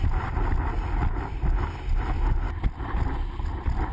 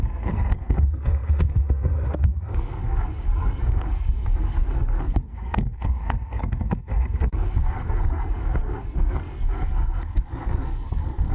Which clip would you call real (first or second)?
first